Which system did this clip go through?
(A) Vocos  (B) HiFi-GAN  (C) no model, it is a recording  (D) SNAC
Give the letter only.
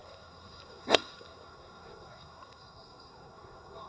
D